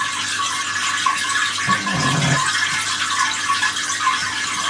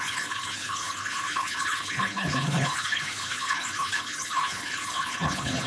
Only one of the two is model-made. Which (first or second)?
second